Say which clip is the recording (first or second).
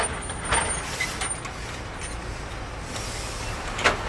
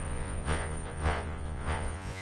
first